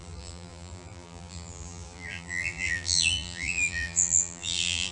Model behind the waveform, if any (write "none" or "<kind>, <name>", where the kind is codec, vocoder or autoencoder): vocoder, BigVGAN v2